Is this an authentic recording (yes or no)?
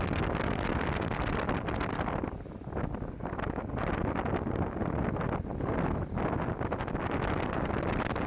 yes